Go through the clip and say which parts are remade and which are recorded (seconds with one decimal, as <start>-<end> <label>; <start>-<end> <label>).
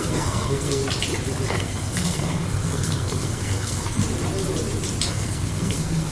0.0-0.8 remade; 0.8-1.5 recorded; 1.5-4.0 remade; 4.0-5.1 recorded; 5.1-6.1 remade